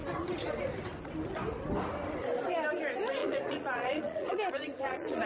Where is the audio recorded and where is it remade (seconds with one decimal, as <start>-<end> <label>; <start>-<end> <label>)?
0.0-3.2 recorded; 3.2-5.3 remade